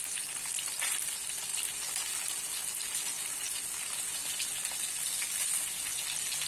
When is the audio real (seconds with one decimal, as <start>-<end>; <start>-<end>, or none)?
0.0-6.5